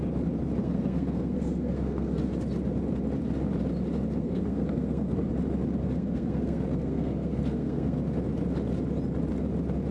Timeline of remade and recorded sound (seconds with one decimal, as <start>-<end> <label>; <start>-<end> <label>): 0.0-0.6 recorded; 0.6-2.3 remade; 2.3-4.2 recorded; 4.2-5.3 remade; 5.3-5.8 recorded; 5.8-8.0 remade; 8.0-9.9 recorded